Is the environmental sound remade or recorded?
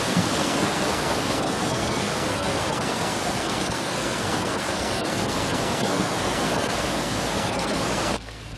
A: remade